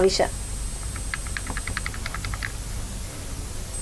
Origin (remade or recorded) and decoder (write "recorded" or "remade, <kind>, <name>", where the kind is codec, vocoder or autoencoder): recorded